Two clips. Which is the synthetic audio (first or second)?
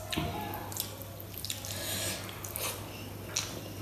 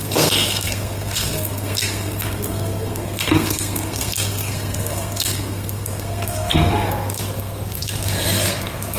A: second